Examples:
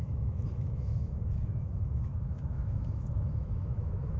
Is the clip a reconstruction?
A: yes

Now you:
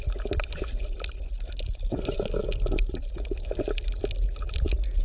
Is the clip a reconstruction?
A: no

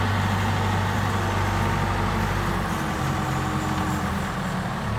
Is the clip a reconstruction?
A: no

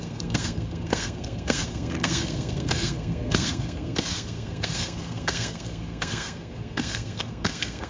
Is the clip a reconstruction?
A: yes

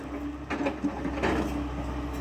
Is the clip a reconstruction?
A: no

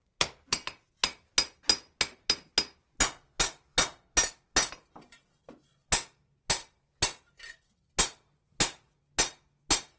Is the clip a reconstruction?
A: no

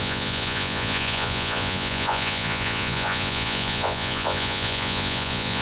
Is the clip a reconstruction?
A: yes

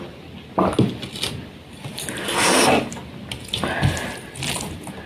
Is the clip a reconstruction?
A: no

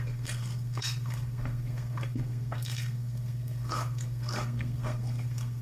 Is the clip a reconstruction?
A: yes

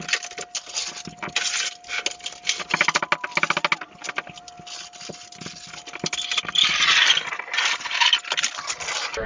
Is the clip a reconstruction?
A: no